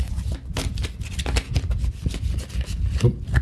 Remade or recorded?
recorded